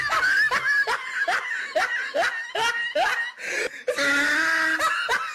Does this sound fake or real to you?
real